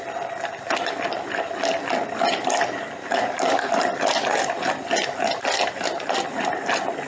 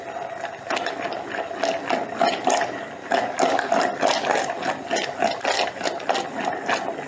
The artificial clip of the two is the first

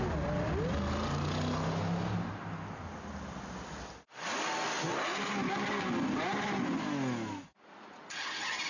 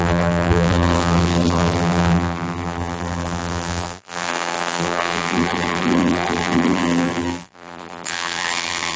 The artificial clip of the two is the second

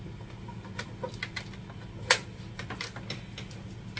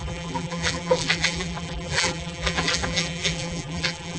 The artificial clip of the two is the second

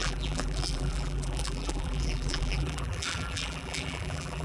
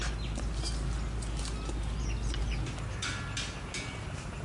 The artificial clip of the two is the first